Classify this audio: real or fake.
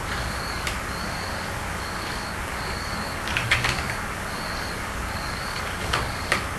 fake